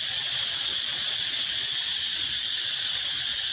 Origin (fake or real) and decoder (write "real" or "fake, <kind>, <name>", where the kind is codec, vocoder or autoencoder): fake, vocoder, Vocos